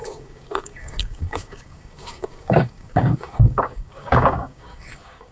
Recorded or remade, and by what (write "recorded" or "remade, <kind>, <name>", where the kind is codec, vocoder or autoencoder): remade, codec, DAC